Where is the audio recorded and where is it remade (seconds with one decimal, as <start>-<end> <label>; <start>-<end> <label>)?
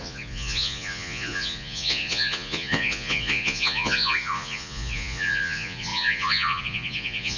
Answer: 0.0-7.4 remade